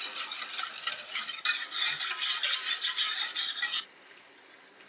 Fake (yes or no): no